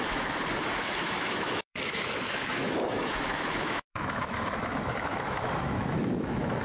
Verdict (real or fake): fake